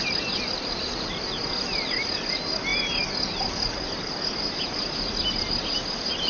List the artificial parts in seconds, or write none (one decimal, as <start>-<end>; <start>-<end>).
none